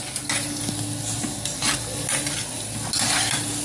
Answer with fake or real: real